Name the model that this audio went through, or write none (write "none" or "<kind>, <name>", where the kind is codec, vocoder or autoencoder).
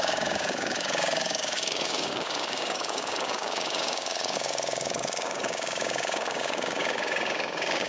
codec, DAC